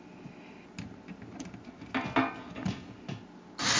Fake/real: real